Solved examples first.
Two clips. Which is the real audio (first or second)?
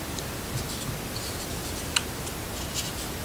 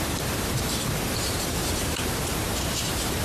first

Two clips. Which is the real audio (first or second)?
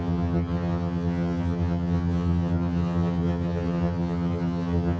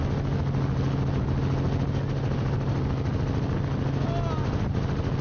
second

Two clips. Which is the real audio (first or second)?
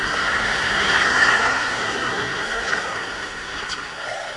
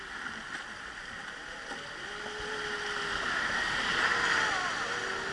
second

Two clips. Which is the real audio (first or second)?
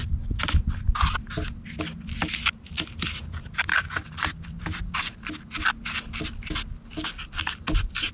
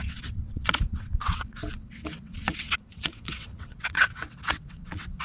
first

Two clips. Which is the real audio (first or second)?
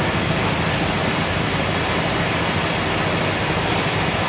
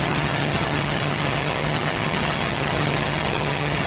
first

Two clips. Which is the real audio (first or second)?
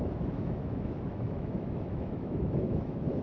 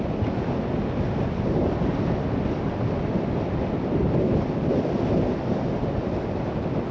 second